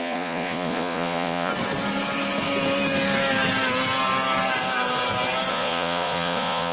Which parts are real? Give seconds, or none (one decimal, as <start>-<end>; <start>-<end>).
1.5-5.5